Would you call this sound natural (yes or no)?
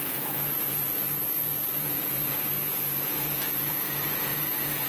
no